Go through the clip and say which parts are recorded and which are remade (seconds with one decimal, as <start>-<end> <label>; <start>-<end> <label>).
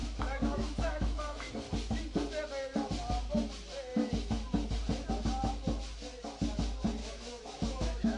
0.0-1.5 remade; 1.5-7.0 recorded; 7.0-8.2 remade